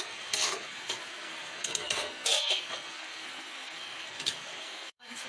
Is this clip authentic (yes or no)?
no